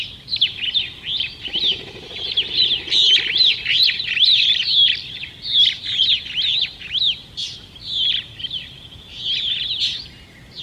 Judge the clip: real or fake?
real